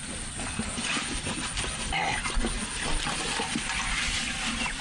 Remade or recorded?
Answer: recorded